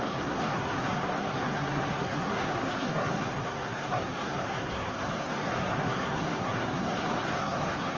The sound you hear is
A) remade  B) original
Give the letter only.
A